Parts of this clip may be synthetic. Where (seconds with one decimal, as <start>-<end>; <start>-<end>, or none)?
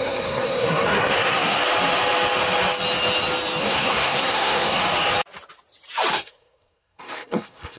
0.0-1.6; 3.6-4.8; 6.1-7.8